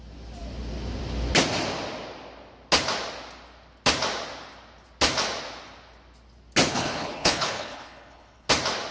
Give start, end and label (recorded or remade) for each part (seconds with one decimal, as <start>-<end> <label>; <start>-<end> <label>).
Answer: 0.0-6.7 recorded; 6.7-8.5 remade; 8.5-8.9 recorded